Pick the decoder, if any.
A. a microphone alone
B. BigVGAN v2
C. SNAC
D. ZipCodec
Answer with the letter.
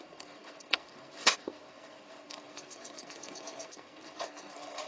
C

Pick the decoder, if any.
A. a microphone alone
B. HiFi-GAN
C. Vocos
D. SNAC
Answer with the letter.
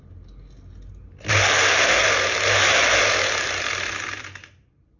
A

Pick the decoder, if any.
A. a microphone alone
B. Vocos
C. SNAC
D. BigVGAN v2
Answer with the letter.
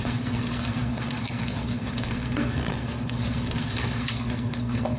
C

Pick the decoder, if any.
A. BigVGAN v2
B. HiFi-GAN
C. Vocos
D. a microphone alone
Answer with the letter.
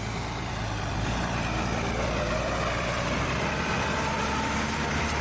A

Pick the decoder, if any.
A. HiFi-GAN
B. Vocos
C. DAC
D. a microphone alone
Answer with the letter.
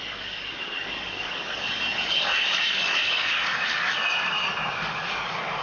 C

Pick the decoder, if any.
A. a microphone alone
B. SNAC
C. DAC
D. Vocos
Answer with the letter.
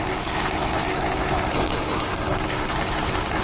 B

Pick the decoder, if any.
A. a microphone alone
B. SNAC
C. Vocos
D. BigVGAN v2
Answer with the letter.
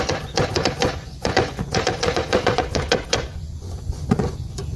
C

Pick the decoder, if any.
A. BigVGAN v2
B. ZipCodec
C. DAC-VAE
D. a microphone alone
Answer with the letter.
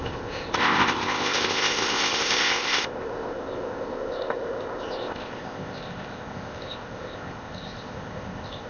B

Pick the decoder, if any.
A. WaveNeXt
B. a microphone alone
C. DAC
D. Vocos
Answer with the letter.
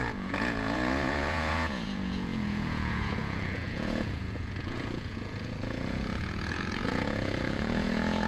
D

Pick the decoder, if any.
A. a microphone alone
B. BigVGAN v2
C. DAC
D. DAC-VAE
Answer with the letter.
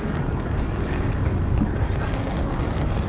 C